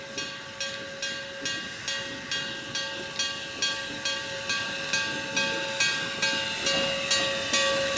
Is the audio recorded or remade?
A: recorded